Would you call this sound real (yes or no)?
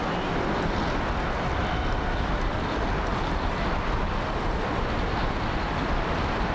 yes